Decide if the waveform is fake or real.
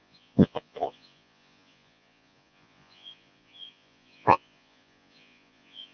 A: fake